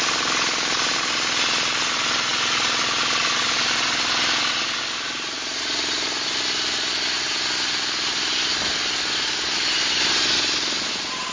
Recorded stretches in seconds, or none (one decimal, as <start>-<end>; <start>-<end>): 0.0-2.3; 4.4-11.3